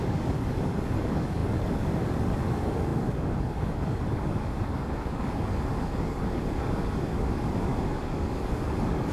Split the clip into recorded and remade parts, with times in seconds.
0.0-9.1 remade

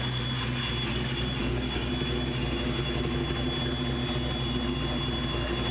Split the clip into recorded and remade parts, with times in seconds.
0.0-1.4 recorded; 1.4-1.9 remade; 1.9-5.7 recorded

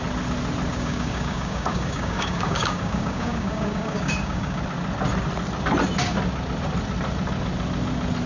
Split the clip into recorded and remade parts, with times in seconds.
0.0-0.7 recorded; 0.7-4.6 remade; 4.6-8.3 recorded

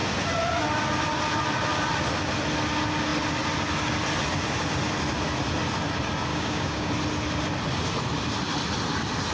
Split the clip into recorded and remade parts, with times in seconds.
0.0-6.3 recorded; 6.3-6.9 remade; 6.9-9.3 recorded

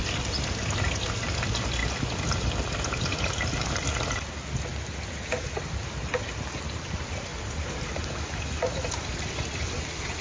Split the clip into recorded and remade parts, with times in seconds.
0.0-10.2 recorded

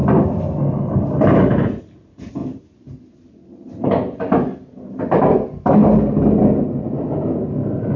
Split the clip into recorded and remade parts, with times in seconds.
0.0-8.0 recorded

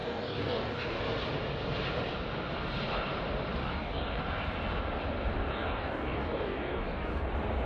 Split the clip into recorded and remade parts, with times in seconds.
0.0-1.0 remade; 1.0-3.6 recorded; 3.6-4.2 remade; 4.2-5.5 recorded; 5.5-7.3 remade; 7.3-7.7 recorded